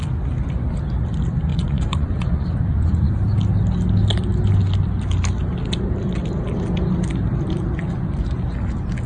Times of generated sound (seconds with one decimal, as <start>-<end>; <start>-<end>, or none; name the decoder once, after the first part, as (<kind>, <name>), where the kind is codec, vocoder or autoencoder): 1.5-3.1 (vocoder, Vocos)